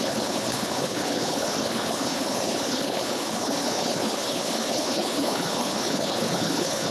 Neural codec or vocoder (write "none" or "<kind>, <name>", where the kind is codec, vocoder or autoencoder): codec, HILCodec